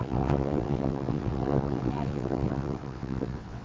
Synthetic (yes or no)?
yes